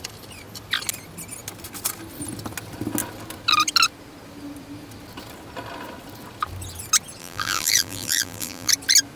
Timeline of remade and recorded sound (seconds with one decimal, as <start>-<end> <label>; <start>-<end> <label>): 0.0-7.2 recorded; 7.2-8.7 remade; 8.7-9.2 recorded